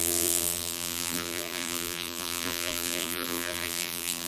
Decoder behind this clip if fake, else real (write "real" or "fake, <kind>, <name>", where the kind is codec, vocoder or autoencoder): fake, vocoder, BigVGAN v2